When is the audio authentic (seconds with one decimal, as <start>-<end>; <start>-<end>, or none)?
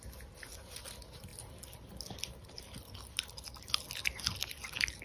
0.0-5.0